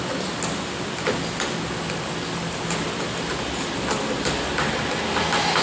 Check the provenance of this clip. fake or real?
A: real